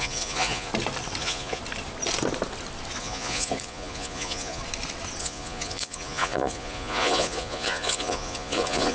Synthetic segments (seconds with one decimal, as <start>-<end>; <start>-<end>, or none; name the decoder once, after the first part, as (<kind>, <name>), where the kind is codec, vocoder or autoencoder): 0.0-0.7 (vocoder, Vocos); 1.2-1.6; 3.0-4.6; 5.2-8.9